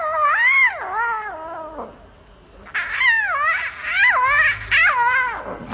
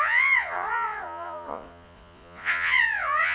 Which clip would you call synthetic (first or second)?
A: second